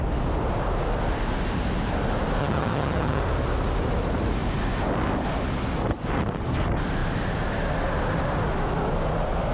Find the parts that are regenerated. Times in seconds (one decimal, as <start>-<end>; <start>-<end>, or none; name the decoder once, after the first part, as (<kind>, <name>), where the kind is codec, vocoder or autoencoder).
2.4-3.2 (vocoder, HiFi-GAN)